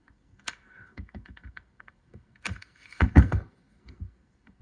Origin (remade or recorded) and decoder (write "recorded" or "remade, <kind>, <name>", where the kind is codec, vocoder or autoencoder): remade, codec, SNAC